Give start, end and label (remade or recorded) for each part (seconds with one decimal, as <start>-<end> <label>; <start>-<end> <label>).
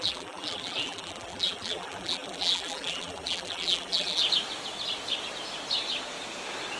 0.0-4.2 remade; 4.2-6.8 recorded